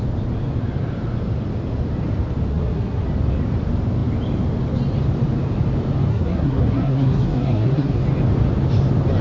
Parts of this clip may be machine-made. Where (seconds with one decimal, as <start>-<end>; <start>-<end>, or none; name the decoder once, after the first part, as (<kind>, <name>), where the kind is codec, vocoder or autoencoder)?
2.5-3.0 (codec, SNAC); 6.1-8.0